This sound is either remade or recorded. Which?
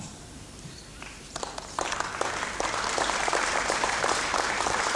remade